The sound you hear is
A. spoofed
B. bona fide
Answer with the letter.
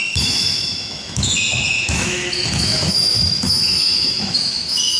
A